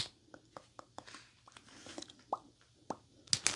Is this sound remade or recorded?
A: recorded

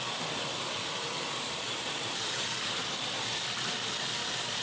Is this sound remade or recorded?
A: recorded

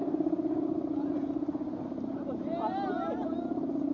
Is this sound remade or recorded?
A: recorded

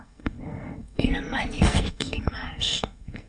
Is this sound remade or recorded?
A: remade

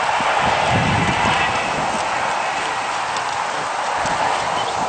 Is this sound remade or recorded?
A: recorded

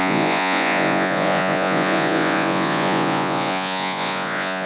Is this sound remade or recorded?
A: remade